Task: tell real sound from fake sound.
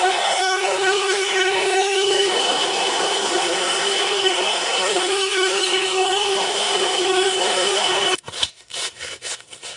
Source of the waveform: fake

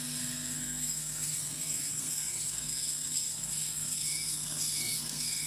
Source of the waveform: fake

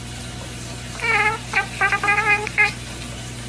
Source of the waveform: real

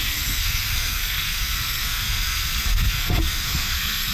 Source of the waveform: fake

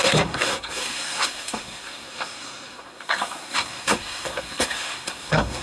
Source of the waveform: fake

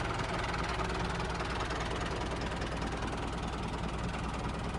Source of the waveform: real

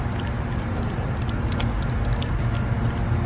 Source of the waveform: real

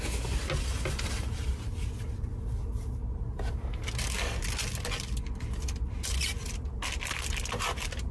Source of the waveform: real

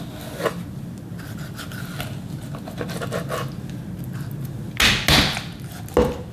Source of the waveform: real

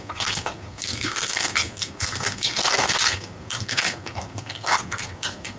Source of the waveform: fake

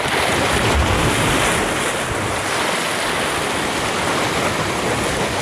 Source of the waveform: real